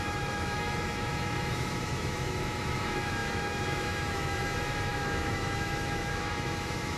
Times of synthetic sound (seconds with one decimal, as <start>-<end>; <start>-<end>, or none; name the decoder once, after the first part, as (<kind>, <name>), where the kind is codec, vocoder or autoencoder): 0.0-7.0 (autoencoder, DAC-VAE)